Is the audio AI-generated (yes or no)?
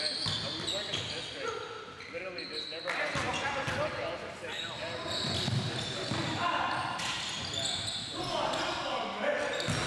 no